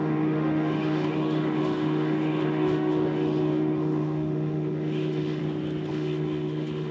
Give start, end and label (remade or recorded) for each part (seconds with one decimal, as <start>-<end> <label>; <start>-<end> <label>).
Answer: 0.0-5.4 remade; 5.4-5.9 recorded; 5.9-6.9 remade